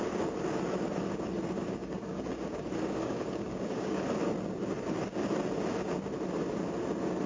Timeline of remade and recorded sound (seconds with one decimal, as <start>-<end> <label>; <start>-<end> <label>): 0.0-1.8 recorded; 1.8-4.0 remade; 4.0-7.3 recorded